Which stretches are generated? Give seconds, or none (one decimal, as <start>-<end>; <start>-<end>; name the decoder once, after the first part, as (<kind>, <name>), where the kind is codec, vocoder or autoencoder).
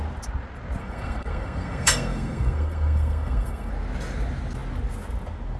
0.8-3.7 (codec, SNAC)